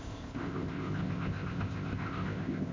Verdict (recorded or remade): remade